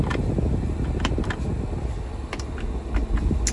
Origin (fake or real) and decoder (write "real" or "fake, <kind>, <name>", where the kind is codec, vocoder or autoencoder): real